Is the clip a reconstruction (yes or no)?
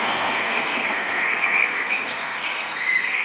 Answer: yes